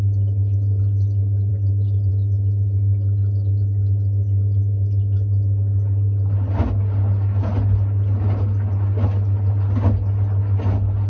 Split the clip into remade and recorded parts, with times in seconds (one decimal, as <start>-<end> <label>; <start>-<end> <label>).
0.0-11.1 recorded